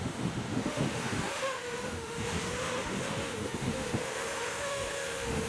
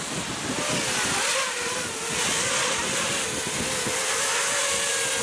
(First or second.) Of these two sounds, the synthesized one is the first